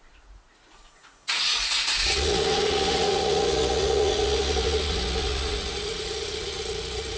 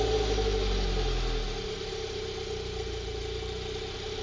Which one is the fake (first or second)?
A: first